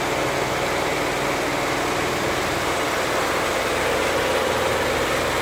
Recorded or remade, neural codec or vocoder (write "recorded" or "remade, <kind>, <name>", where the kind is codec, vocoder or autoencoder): recorded